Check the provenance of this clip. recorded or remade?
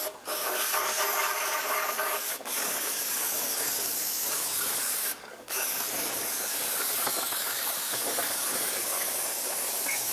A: remade